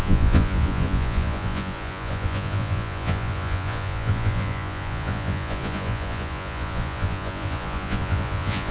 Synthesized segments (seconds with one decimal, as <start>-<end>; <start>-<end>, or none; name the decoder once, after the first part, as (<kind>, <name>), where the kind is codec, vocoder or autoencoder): 0.0-8.7 (vocoder, Vocos)